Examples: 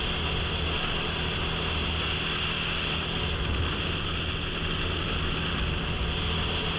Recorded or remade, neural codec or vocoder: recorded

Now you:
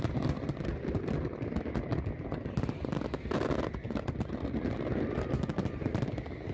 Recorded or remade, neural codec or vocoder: recorded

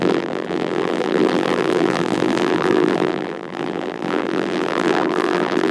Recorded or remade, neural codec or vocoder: remade, vocoder, BigVGAN v2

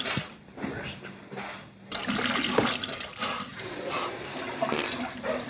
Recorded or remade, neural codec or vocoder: remade, vocoder, BigVGAN v2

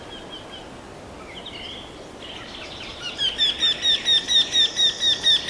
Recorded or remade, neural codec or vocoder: recorded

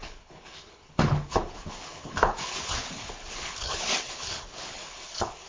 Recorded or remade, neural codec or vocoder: remade, codec, HILCodec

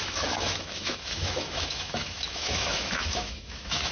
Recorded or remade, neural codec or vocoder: remade, autoencoder, DAC-VAE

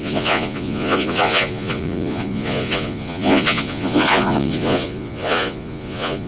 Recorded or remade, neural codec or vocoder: remade, vocoder, Vocos